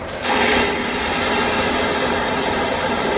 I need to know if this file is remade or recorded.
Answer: recorded